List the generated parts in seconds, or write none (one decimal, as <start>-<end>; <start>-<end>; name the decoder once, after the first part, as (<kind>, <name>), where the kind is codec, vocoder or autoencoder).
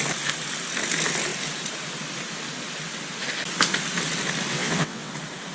4.5-5.1 (vocoder, WaveNeXt)